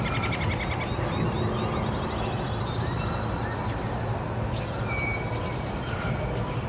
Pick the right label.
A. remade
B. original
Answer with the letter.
B